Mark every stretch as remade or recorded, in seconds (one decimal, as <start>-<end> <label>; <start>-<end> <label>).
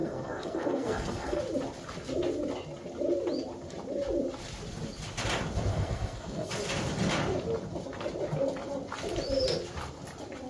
0.0-1.4 remade; 1.4-5.7 recorded; 5.7-6.5 remade; 6.5-10.5 recorded